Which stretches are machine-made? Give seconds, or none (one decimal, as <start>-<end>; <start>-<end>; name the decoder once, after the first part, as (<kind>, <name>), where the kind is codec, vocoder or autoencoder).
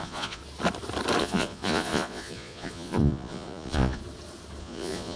0.0-0.4 (vocoder, Vocos); 1.2-4.0; 4.6-5.2